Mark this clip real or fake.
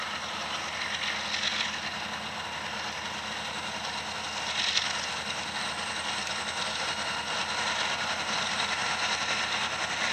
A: real